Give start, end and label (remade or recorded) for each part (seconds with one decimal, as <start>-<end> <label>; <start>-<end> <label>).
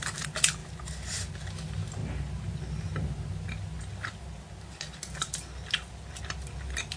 0.0-7.0 recorded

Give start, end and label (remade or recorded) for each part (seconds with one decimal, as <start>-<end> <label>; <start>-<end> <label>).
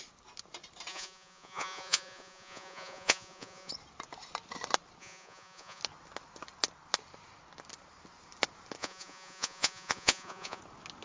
0.0-0.9 recorded; 0.9-3.7 remade; 3.7-5.0 recorded; 5.0-5.8 remade; 5.8-8.8 recorded; 8.8-10.6 remade; 10.6-11.0 recorded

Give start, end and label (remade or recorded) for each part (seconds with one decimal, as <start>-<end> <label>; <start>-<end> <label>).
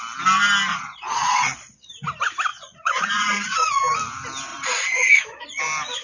0.0-0.7 recorded; 0.7-1.9 remade; 1.9-2.5 recorded; 2.5-3.8 remade; 3.8-4.5 recorded; 4.5-5.6 remade; 5.6-6.0 recorded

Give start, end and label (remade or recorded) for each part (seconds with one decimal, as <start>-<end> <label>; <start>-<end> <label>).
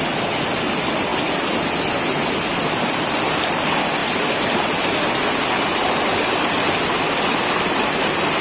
0.0-8.4 recorded